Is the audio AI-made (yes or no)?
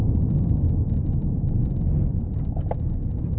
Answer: no